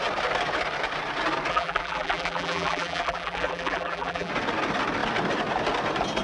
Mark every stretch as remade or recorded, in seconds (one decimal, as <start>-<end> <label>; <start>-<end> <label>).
0.0-1.5 recorded; 1.5-4.3 remade; 4.3-6.2 recorded